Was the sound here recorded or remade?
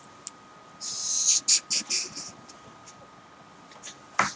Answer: recorded